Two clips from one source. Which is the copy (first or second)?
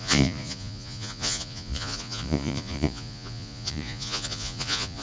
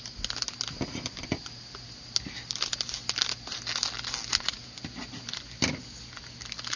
first